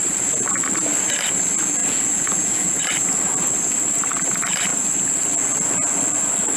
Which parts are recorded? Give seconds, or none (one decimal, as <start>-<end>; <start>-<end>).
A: 0.0-1.8; 2.8-6.6